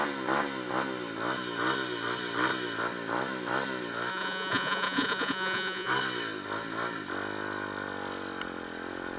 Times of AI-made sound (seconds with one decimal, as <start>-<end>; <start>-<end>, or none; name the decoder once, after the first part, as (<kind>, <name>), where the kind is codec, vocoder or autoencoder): 4.1-5.9 (vocoder, Vocos)